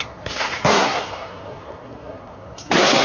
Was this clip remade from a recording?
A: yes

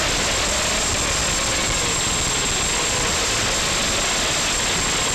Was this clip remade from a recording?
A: no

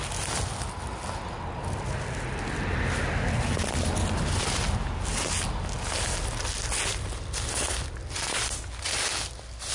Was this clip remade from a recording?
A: no